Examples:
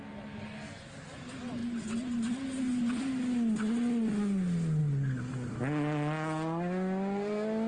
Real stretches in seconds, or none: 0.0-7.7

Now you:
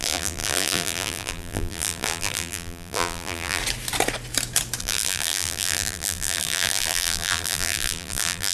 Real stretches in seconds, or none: 3.6-4.8

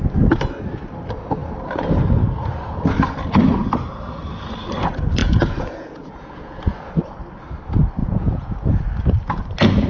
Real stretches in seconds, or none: 0.0-5.2; 6.9-8.0; 8.8-9.9

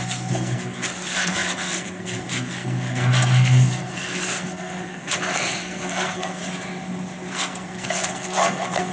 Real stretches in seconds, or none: 6.4-7.3

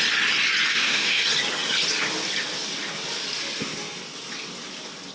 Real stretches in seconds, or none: 0.0-0.7; 1.2-5.1

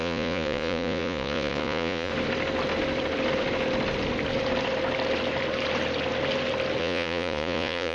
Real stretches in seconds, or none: 2.1-6.8

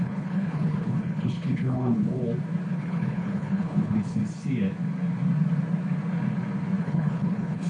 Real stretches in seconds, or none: 2.2-2.7; 4.2-6.8

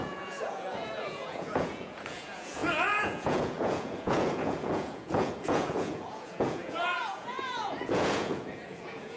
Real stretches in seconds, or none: none